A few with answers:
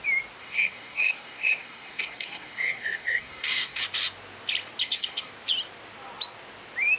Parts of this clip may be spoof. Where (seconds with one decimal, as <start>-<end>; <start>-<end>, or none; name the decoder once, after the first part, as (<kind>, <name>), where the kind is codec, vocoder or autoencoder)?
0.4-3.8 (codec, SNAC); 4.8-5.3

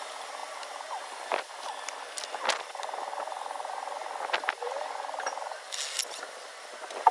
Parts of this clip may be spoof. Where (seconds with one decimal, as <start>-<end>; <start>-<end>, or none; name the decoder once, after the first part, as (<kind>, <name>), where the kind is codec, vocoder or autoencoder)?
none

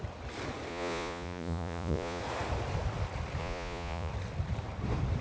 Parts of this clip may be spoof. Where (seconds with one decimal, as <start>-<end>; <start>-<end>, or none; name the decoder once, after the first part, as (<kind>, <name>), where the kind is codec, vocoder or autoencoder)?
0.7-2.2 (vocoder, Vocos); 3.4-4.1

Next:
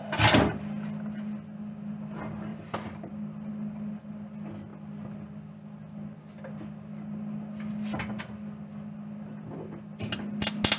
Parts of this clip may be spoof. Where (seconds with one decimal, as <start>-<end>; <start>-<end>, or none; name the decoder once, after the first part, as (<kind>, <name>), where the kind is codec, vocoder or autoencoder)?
2.5-3.1 (vocoder, BigVGAN v2)

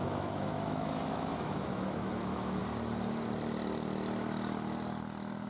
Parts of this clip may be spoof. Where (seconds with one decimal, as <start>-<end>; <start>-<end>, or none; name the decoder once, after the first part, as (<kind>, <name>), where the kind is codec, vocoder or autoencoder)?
0.0-2.6 (autoencoder, DAC-VAE)

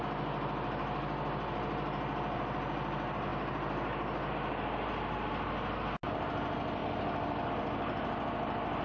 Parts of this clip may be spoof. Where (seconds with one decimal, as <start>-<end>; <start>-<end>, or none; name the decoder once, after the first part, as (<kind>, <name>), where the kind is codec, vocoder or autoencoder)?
none

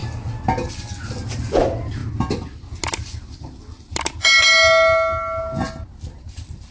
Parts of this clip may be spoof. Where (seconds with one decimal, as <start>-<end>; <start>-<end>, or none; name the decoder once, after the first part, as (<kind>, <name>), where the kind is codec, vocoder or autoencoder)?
none

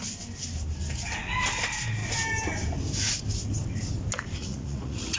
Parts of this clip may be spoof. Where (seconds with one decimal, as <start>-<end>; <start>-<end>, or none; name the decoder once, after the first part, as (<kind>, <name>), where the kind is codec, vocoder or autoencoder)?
4.4-5.2 (vocoder, Vocos)